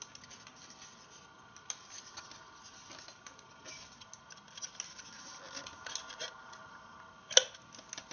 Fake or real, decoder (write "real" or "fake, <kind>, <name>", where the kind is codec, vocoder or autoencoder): real